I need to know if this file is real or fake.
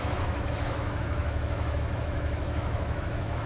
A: fake